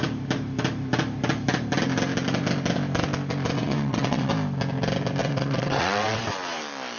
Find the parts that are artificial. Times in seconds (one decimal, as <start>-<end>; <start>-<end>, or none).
3.6-4.3; 5.2-6.2